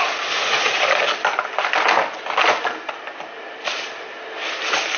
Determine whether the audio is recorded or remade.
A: recorded